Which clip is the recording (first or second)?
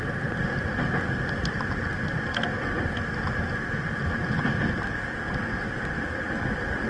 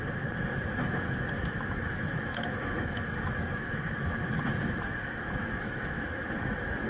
first